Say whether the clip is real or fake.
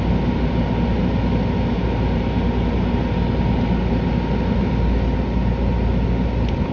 real